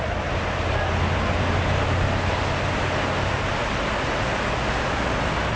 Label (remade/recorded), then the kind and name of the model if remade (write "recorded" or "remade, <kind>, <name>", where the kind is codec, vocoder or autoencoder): recorded